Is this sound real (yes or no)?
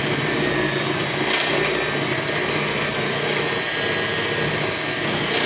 yes